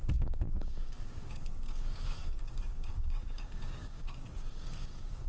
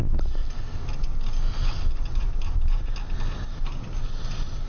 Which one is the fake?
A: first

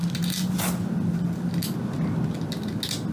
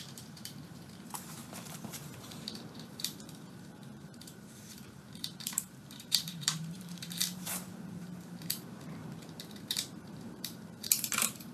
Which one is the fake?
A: second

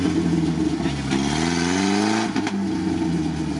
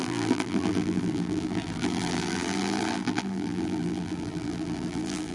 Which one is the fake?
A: second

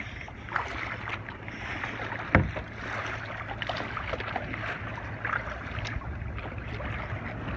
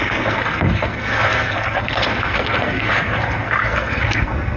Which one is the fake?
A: second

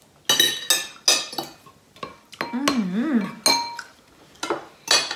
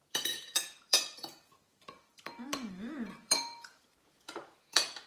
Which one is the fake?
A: second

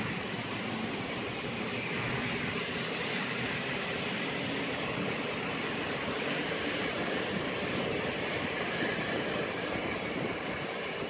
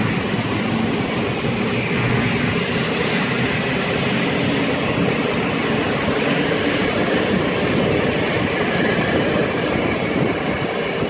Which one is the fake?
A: first